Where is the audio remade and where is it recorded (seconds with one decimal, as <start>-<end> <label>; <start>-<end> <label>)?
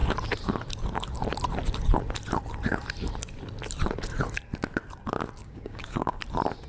0.0-5.4 recorded; 5.4-6.2 remade; 6.2-6.7 recorded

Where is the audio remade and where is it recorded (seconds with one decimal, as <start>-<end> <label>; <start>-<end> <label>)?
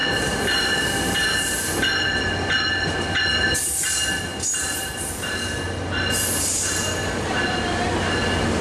0.0-8.6 recorded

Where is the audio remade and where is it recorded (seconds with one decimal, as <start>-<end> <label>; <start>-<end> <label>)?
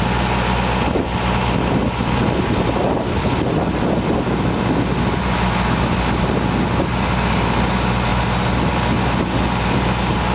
0.0-10.3 recorded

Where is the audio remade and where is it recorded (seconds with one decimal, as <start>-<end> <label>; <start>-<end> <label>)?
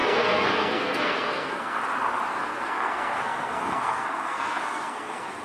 0.0-1.8 remade; 1.8-2.3 recorded; 2.3-5.4 remade